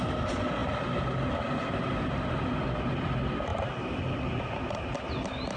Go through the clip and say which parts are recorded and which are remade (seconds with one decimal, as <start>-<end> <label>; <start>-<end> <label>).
0.0-5.6 recorded